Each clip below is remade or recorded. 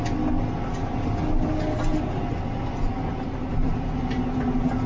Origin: recorded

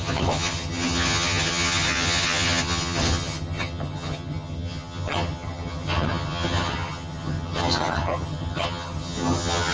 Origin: remade